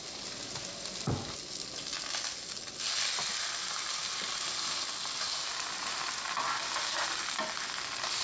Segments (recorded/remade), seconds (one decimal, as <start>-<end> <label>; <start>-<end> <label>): 0.0-8.2 recorded